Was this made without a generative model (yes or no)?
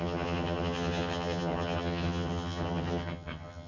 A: no